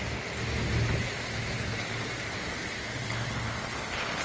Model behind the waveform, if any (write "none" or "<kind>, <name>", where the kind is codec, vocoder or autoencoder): none